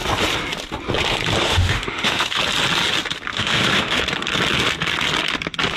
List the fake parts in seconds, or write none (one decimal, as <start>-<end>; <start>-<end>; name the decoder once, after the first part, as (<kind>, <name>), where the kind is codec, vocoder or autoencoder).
1.4-2.4 (autoencoder, DAC-VAE); 3.3-4.0